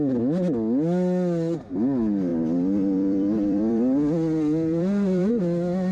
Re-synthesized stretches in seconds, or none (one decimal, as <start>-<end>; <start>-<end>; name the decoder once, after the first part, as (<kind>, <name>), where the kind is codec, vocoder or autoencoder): 2.3-5.3 (vocoder, BigVGAN v2)